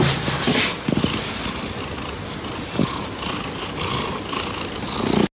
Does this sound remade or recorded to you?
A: recorded